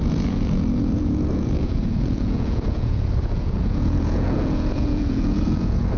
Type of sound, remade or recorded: remade